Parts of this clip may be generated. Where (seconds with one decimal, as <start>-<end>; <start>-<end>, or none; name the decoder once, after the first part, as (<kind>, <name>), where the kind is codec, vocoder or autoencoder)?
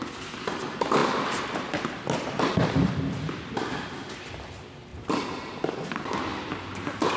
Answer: none